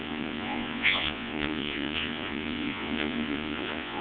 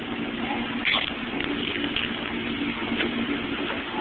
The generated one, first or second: first